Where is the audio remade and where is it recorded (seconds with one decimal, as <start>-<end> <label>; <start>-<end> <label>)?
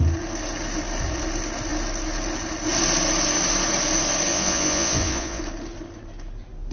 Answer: 0.0-4.3 recorded; 4.3-5.4 remade; 5.4-6.7 recorded